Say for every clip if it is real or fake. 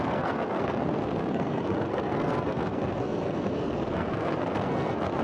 fake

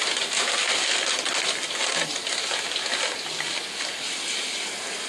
real